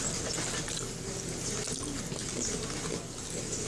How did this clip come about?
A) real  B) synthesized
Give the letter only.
A